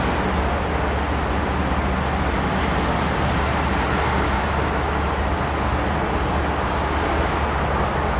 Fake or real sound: real